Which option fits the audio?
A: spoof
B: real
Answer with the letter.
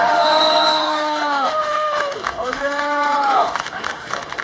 A